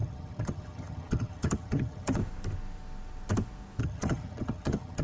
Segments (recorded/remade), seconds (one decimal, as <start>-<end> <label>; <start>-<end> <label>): 0.0-2.2 remade; 2.2-3.8 recorded; 3.8-5.0 remade